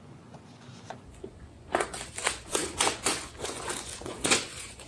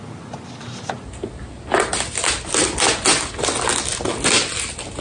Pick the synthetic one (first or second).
first